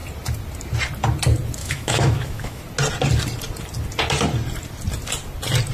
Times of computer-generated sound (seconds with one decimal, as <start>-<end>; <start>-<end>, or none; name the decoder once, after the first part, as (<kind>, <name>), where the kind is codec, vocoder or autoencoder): 1.6-2.6 (autoencoder, DAC-VAE)